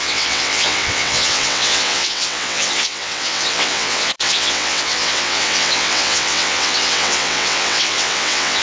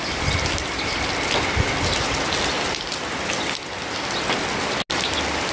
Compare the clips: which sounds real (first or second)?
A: second